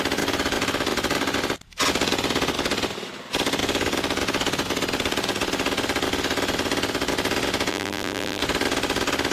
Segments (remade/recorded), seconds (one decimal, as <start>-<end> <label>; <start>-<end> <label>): 0.0-7.7 recorded; 7.7-8.4 remade; 8.4-9.3 recorded

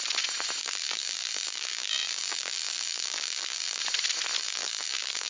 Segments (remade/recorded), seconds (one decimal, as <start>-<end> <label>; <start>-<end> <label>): 0.0-0.6 recorded; 0.6-3.8 remade; 3.8-4.4 recorded; 4.4-5.3 remade